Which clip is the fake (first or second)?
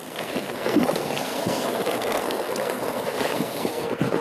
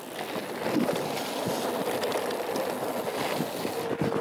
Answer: first